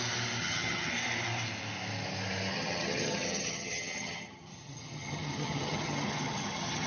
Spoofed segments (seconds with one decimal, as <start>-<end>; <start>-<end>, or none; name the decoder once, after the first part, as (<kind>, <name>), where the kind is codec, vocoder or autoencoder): 0.4-0.9 (vocoder, HiFi-GAN); 2.5-6.9